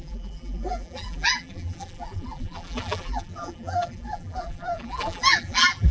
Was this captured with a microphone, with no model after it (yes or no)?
no